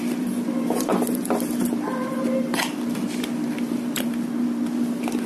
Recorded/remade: remade